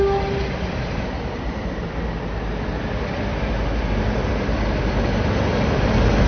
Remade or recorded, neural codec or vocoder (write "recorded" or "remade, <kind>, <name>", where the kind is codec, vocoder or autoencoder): recorded